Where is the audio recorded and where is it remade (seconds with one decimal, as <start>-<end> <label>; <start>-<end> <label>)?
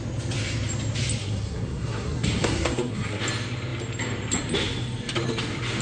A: 0.0-1.2 recorded; 1.2-3.2 remade; 3.2-5.8 recorded